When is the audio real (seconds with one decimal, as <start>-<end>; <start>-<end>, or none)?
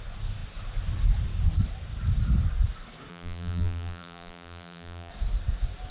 0.0-3.1; 5.1-5.9